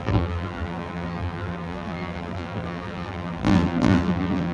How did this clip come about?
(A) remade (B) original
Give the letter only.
A